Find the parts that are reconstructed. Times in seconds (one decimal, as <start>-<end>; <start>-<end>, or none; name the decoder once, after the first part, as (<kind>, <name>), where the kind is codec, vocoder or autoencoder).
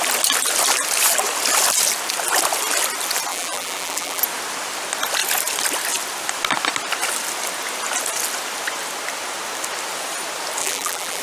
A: 3.3-4.2 (vocoder, BigVGAN v2); 10.6-11.2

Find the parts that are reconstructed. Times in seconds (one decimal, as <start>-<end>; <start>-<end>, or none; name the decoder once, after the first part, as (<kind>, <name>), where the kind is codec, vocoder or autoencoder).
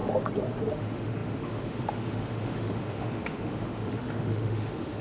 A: 0.7-5.0 (autoencoder, DAC-VAE)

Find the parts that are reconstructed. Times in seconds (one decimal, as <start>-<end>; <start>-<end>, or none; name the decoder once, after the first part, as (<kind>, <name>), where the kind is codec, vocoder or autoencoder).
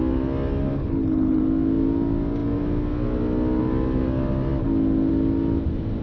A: 0.8-1.4 (codec, HILCodec)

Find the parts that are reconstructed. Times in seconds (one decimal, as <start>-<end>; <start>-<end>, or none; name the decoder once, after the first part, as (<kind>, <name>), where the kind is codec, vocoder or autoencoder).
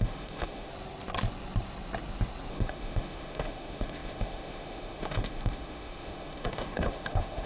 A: 0.0-0.7 (autoencoder, DAC-VAE); 2.5-7.5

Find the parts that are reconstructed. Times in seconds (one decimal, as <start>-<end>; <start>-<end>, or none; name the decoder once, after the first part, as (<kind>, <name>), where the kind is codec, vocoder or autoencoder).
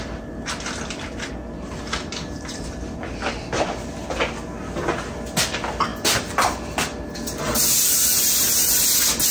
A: none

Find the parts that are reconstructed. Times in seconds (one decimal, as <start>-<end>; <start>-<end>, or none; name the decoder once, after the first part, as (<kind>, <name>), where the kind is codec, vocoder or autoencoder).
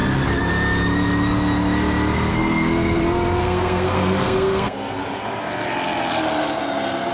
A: 2.3-3.0 (codec, SNAC); 3.4-5.0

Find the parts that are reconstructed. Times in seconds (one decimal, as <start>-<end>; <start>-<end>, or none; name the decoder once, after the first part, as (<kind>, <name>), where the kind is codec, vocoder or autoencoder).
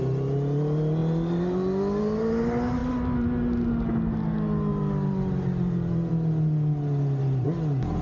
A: none